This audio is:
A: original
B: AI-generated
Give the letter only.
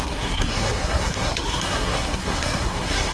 B